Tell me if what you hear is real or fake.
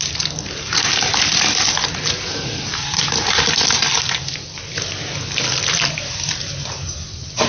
real